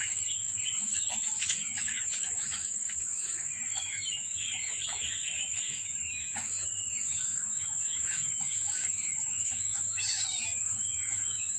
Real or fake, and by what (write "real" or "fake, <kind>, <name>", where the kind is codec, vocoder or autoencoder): fake, autoencoder, DAC-VAE